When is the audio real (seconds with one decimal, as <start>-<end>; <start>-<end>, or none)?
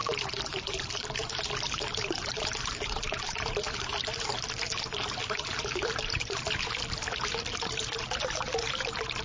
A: 3.9-5.2; 6.7-9.2